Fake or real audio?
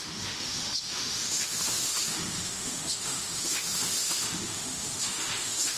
fake